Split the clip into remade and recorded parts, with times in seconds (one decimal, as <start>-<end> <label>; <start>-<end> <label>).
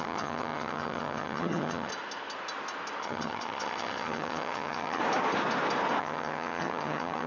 0.0-1.9 remade; 1.9-3.0 recorded; 3.0-5.0 remade; 5.0-6.0 recorded; 6.0-7.3 remade